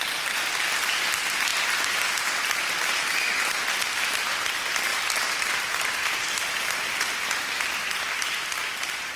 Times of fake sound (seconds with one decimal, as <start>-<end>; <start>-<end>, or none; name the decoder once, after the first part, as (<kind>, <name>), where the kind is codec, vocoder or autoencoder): none